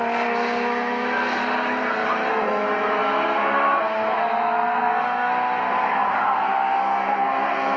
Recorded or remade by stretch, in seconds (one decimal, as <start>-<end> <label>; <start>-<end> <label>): 0.0-1.4 remade; 1.4-2.3 recorded; 2.3-7.8 remade